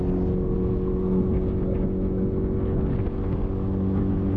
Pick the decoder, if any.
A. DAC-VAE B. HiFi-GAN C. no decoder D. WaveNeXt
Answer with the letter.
C